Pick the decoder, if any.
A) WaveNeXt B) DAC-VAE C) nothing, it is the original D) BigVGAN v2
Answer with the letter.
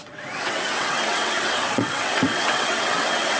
A